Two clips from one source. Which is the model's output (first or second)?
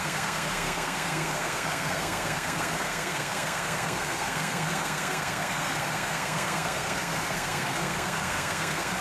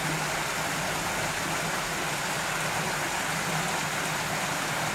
first